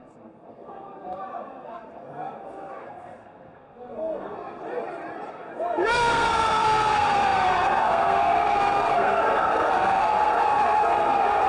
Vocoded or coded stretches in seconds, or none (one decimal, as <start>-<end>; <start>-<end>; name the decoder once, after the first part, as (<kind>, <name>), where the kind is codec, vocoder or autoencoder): 0.0-4.6 (codec, SNAC); 5.3-11.5